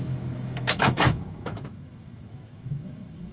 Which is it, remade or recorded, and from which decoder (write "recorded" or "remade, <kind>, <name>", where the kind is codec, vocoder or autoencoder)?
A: remade, autoencoder, DAC-VAE